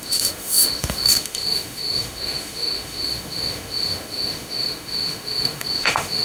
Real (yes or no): no